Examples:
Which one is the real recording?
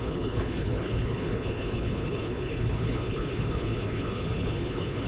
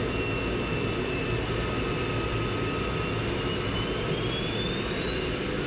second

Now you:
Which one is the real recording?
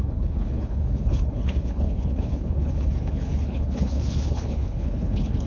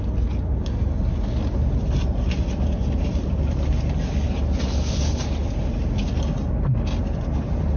second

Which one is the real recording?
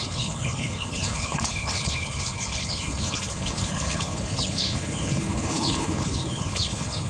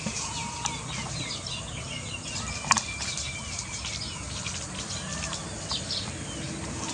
second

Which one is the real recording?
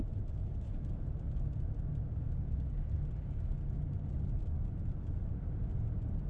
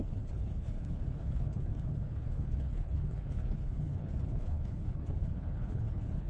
first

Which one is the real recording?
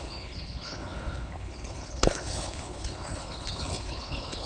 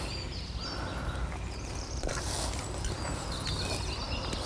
second